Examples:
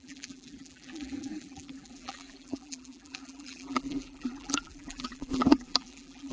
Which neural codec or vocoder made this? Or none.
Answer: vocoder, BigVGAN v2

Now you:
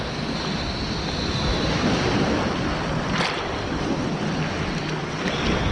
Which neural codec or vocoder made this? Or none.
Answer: vocoder, BigVGAN v2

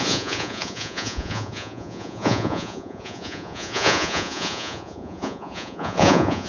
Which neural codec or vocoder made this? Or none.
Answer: vocoder, Vocos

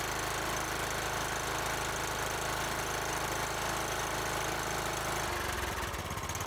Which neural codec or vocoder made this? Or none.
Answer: none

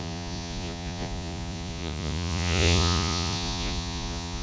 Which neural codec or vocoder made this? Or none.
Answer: vocoder, Vocos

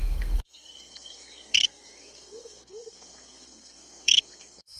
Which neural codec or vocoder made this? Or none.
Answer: codec, SNAC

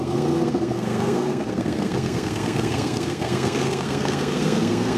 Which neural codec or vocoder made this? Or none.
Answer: codec, SNAC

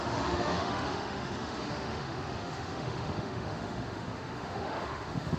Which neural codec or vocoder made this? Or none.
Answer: autoencoder, DAC-VAE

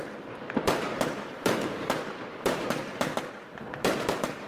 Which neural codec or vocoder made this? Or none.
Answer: vocoder, BigVGAN v2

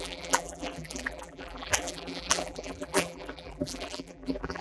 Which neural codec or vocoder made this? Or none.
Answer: vocoder, BigVGAN v2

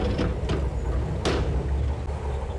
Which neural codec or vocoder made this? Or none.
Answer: none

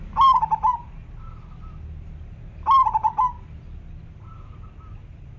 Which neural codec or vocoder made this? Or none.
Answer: none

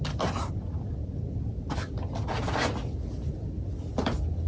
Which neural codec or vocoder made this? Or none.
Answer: none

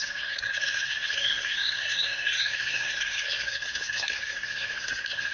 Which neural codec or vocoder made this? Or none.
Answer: codec, SNAC